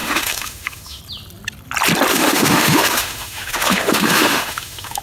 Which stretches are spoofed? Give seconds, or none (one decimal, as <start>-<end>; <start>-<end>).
0.0-1.0; 2.1-5.0